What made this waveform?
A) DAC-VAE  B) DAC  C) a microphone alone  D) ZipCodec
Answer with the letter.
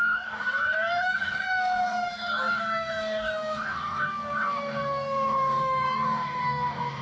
B